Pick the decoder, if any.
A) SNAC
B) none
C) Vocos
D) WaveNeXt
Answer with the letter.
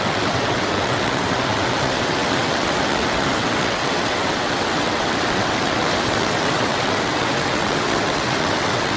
D